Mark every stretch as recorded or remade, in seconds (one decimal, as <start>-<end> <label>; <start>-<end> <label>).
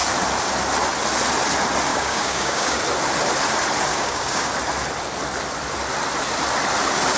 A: 0.0-1.9 recorded; 1.9-2.8 remade; 2.8-3.9 recorded; 3.9-4.5 remade; 4.5-7.2 recorded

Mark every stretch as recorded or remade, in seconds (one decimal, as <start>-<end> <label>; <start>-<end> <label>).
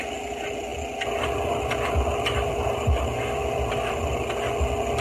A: 0.0-5.0 recorded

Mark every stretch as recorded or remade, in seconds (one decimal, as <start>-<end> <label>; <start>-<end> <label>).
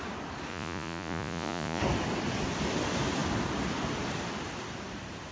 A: 0.0-0.5 recorded; 0.5-1.8 remade; 1.8-5.3 recorded